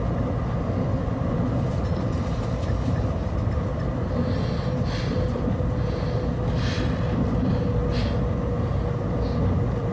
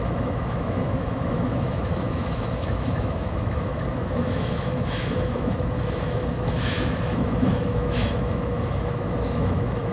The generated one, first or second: second